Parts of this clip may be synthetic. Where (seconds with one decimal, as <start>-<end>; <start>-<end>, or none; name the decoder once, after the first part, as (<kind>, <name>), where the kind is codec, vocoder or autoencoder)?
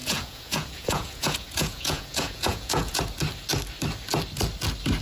0.0-3.0 (vocoder, Vocos)